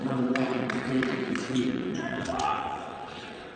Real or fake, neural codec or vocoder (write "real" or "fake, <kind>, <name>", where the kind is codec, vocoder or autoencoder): fake, vocoder, WaveNeXt